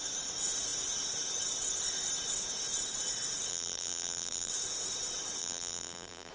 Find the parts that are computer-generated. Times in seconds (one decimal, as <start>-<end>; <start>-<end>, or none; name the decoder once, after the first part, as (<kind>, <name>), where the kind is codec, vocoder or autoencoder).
3.5-4.5 (vocoder, BigVGAN v2); 5.4-6.3